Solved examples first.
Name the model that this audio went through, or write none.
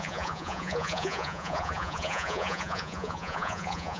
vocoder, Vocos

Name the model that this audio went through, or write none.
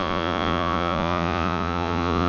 vocoder, Vocos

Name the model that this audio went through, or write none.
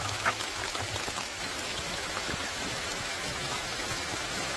autoencoder, DAC-VAE